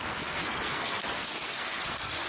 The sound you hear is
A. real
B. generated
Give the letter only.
B